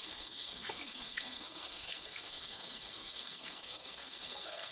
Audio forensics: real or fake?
fake